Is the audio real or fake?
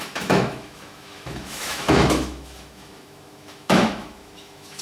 fake